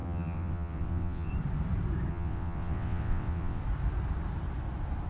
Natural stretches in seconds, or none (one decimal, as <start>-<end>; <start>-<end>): 1.3-2.1; 3.6-5.1